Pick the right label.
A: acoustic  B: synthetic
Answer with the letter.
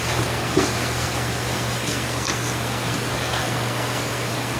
B